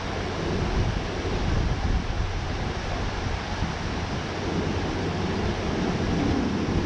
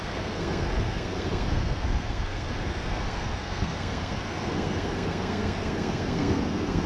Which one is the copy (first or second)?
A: second